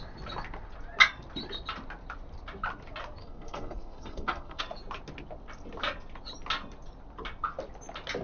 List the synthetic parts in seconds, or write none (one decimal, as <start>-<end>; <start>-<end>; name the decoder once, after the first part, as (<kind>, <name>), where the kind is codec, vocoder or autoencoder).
3.2-4.6 (codec, SNAC)